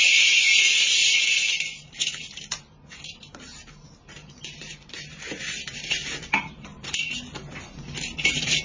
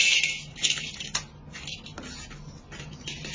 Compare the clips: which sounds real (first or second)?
second